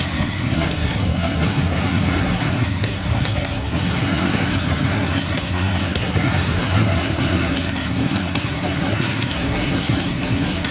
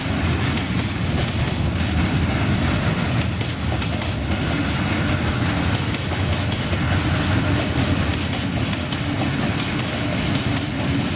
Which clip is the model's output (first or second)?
first